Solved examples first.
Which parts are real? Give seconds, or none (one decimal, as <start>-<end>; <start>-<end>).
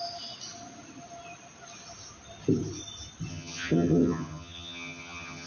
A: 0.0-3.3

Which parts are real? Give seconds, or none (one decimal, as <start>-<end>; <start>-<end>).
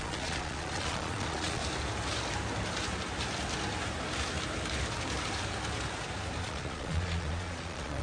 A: 1.6-6.4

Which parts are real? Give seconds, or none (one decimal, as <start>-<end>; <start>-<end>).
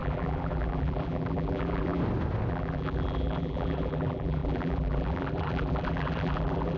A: 2.0-2.5